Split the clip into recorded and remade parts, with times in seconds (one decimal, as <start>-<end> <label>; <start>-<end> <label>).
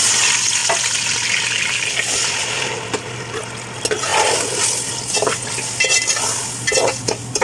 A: 0.0-7.4 recorded